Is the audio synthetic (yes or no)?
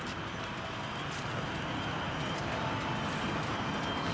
no